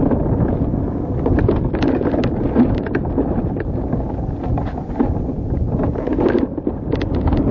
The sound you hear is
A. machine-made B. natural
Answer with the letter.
B